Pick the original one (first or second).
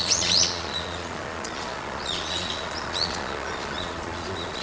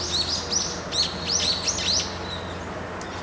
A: second